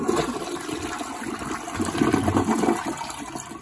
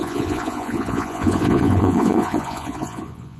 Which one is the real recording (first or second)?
first